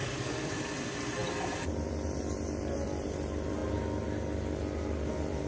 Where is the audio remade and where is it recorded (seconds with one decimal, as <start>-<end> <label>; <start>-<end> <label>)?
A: 0.0-3.6 remade; 3.6-5.1 recorded; 5.1-5.5 remade